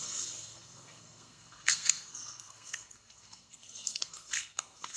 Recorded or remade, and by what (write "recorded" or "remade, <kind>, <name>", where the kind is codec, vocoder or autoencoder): remade, codec, SNAC